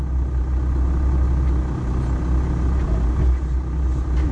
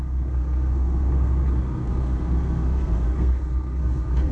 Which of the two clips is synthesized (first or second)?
second